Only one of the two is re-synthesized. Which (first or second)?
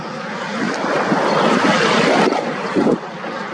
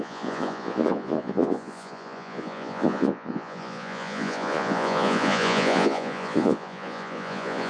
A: second